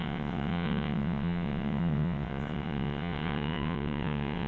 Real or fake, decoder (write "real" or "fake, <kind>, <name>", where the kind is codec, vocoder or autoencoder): fake, vocoder, WaveNeXt